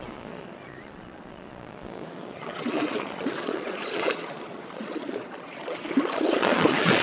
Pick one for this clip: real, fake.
fake